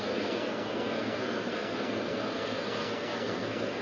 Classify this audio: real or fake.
fake